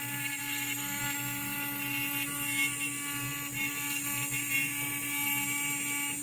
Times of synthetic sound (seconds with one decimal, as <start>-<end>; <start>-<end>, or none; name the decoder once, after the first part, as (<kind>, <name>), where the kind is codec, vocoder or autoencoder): 0.4-1.0 (codec, SNAC)